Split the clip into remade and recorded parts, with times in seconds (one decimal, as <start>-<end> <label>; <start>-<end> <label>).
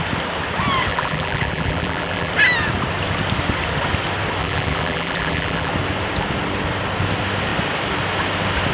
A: 0.0-0.9 recorded; 0.9-2.3 remade; 2.3-4.4 recorded; 4.4-5.7 remade; 5.7-8.7 recorded